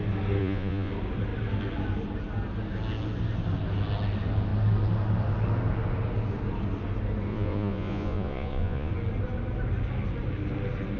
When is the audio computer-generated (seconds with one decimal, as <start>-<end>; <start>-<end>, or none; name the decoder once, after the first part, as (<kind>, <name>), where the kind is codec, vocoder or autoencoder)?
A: 0.4-0.9 (vocoder, Vocos); 7.3-8.9